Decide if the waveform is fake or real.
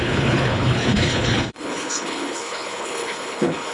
fake